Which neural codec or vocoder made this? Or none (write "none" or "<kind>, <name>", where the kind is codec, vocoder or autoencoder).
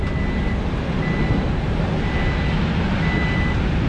none